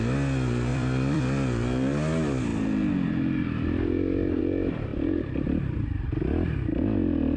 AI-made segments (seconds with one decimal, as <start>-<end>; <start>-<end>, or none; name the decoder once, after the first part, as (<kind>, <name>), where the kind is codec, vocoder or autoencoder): 0.7-1.2 (vocoder, BigVGAN v2); 4.9-6.2